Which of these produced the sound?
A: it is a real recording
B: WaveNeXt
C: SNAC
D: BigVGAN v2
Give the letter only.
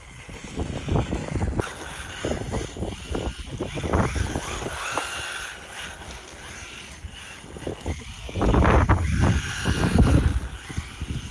A